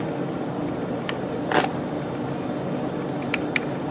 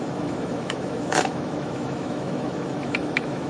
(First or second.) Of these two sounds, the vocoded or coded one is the second